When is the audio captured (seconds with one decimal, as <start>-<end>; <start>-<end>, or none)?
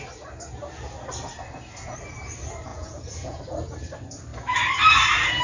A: 0.0-2.7; 3.4-5.4